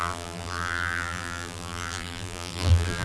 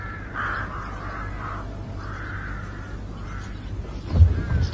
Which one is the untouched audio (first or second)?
second